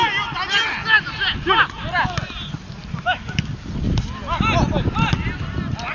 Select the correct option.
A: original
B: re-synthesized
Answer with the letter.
A